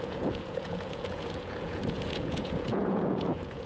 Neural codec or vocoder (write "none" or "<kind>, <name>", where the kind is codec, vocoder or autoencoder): vocoder, Vocos